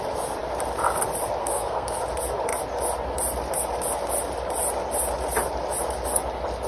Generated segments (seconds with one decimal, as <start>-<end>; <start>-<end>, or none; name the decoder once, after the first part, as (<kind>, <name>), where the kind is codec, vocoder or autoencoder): 1.4-2.0 (codec, SNAC)

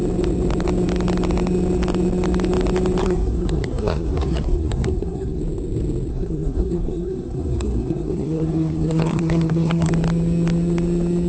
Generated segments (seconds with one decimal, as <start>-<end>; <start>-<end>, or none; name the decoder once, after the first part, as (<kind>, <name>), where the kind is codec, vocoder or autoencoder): 3.0-5.4 (codec, SNAC); 6.1-9.9